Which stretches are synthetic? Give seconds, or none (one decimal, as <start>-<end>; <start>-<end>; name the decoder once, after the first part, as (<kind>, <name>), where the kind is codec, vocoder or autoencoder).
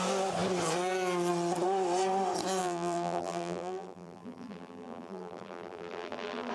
2.6-6.5 (vocoder, BigVGAN v2)